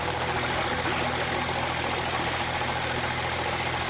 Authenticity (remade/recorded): recorded